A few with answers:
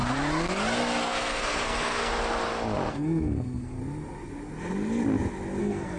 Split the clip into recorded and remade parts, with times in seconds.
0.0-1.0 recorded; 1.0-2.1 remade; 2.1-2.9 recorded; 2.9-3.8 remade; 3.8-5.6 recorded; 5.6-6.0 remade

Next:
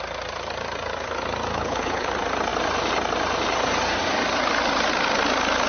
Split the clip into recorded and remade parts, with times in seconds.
0.0-1.5 recorded; 1.5-2.1 remade; 2.1-5.7 recorded

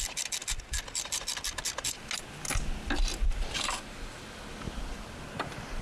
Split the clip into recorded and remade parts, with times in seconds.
0.0-5.8 recorded

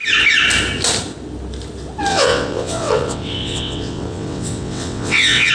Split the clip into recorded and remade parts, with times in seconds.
0.0-2.1 recorded; 2.1-5.5 remade

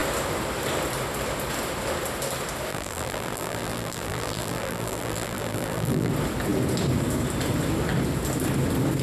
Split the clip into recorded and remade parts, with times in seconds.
0.0-2.7 recorded; 2.7-6.1 remade; 6.1-9.0 recorded

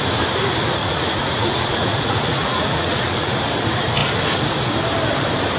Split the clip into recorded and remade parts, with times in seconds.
0.0-0.8 recorded; 0.8-3.5 remade; 3.5-5.6 recorded

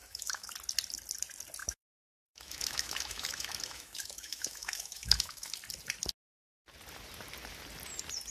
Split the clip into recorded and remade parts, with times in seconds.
0.0-0.5 remade; 0.5-1.6 recorded; 1.6-5.5 remade; 5.5-8.3 recorded